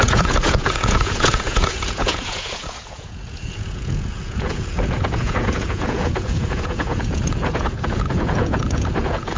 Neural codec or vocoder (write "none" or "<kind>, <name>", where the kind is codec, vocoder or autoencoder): vocoder, Vocos